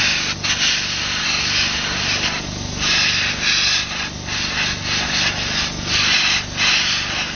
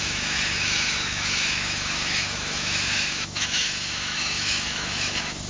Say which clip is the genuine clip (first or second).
first